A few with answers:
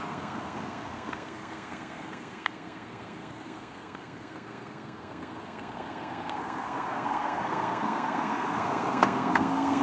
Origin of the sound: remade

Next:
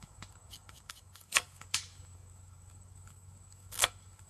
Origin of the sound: remade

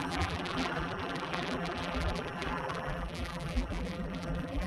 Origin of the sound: remade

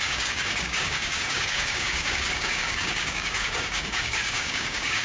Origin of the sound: remade